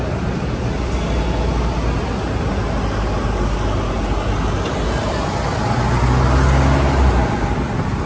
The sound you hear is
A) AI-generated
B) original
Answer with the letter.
B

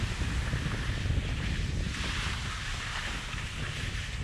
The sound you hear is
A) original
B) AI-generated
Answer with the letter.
A